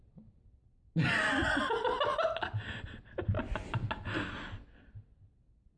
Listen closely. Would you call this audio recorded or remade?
recorded